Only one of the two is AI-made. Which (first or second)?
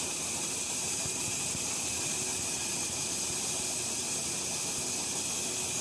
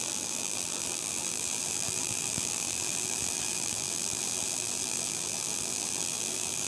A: second